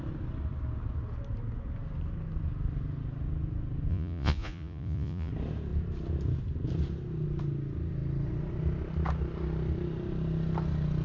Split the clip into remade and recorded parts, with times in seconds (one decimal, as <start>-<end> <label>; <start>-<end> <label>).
0.0-3.9 recorded; 3.9-5.3 remade; 5.3-11.0 recorded